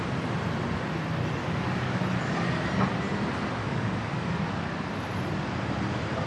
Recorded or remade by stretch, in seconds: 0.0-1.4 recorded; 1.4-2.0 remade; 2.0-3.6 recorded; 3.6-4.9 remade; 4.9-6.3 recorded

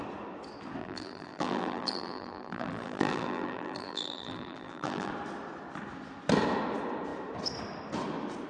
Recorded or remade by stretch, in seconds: 0.0-0.8 recorded; 0.8-5.1 remade; 5.1-8.5 recorded

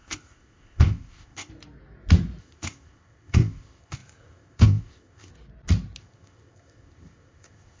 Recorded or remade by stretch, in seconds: 0.0-1.5 remade; 1.5-2.4 recorded; 2.4-5.3 remade; 5.3-6.0 recorded; 6.0-7.8 remade

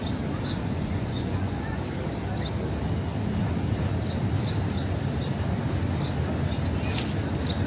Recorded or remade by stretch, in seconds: 0.0-0.6 recorded; 0.6-1.8 remade; 1.8-7.7 recorded

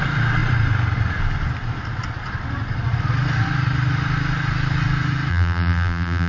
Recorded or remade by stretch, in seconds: 0.0-5.3 recorded; 5.3-6.3 remade

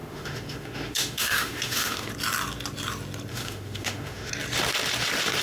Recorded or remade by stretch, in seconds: 0.0-2.1 remade; 2.1-3.3 recorded; 3.3-4.3 remade; 4.3-5.4 recorded

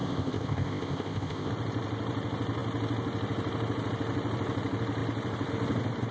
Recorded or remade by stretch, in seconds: 0.0-1.5 remade; 1.5-6.1 recorded